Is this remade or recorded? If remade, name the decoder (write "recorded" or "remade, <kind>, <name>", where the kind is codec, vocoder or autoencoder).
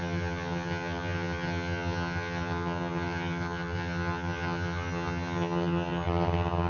remade, vocoder, HiFi-GAN